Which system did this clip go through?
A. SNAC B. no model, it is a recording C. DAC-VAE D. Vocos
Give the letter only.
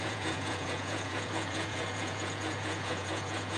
D